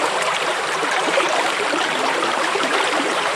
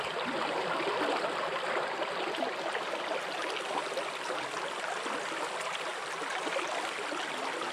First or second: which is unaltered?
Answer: second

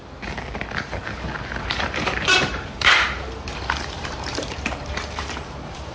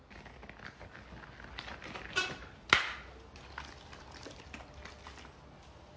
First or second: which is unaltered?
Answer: second